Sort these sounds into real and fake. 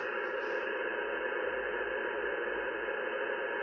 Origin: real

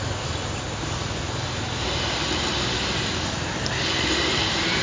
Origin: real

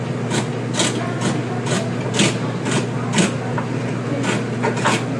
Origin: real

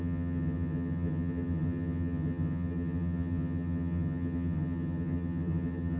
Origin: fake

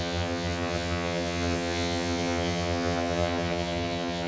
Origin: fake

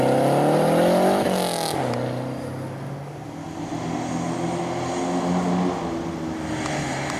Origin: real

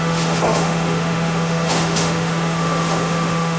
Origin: fake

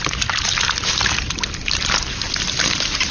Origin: real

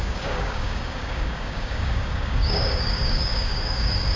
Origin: fake